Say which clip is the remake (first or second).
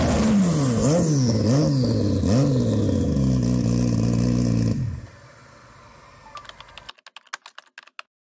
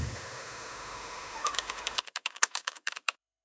second